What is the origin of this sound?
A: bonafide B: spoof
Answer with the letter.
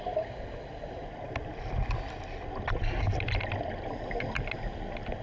A